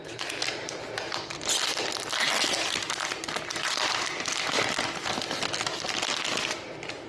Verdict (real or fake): real